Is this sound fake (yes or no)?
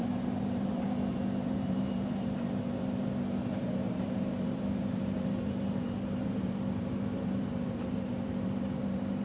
yes